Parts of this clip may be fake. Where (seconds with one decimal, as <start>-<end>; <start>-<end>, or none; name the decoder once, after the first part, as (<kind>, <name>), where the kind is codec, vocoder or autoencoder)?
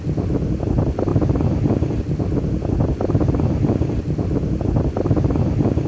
none